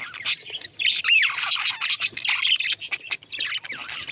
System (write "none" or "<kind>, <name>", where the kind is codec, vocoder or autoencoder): vocoder, BigVGAN v2